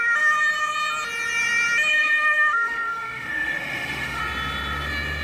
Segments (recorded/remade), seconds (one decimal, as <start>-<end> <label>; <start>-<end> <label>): 0.0-1.9 recorded; 1.9-4.2 remade; 4.2-5.2 recorded